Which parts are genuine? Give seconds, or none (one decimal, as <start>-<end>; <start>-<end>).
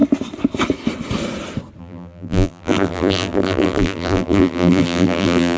0.0-1.8